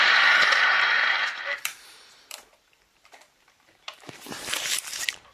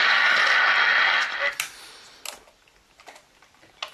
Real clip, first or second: second